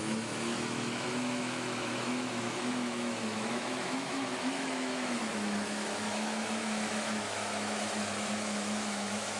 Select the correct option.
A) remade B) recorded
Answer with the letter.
A